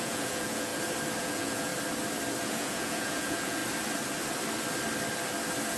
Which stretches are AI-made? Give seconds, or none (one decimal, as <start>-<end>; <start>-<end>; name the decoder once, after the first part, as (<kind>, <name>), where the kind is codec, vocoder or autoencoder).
0.0-0.7 (vocoder, Vocos); 1.2-1.7; 2.4-3.6